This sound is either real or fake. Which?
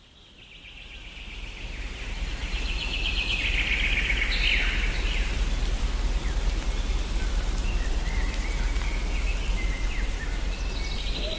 real